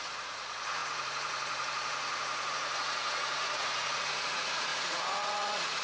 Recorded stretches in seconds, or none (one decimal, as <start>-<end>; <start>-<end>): none